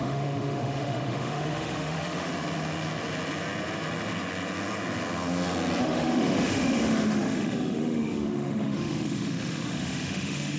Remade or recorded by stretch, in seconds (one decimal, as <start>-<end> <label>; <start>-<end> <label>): 0.0-2.3 remade; 2.3-5.8 recorded; 5.8-10.6 remade